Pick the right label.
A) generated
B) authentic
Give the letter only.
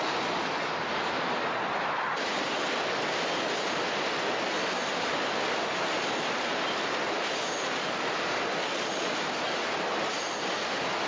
B